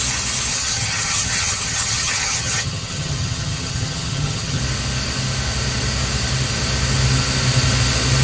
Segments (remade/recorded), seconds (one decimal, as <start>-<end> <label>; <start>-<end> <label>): 0.0-0.5 recorded; 0.5-4.6 remade; 4.6-8.2 recorded